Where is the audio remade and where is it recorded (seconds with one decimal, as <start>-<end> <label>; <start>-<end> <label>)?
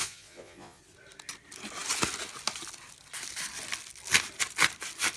0.0-0.8 remade; 0.8-5.2 recorded